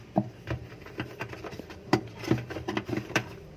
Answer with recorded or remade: remade